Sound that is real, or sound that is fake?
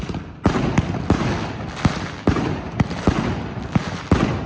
real